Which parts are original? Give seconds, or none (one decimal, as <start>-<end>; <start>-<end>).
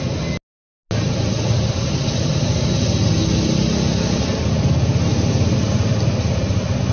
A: 0.0-6.9